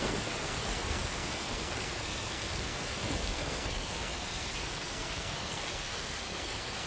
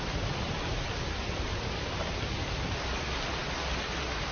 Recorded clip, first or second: second